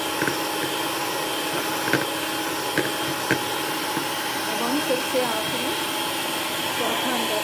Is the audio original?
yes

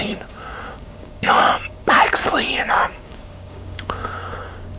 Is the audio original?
no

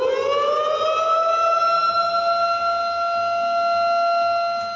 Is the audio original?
yes